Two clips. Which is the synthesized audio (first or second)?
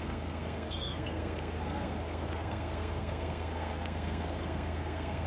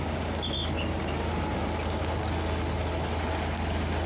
first